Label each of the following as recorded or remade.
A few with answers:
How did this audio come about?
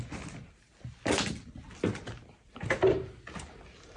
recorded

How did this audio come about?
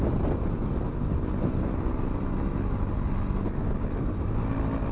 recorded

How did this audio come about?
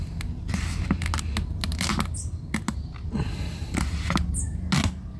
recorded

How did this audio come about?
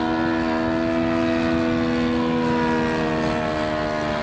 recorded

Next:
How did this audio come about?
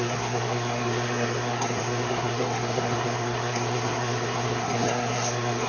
remade